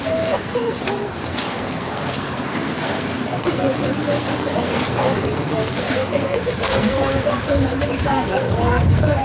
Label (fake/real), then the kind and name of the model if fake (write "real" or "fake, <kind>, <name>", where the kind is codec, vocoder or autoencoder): fake, codec, SNAC